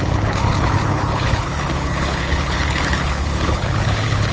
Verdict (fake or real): fake